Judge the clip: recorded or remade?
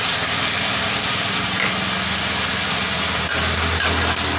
recorded